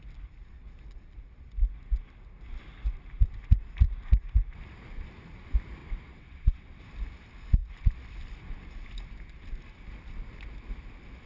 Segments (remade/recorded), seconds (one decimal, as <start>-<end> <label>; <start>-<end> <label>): 0.0-5.8 recorded; 5.8-6.8 remade; 6.8-11.3 recorded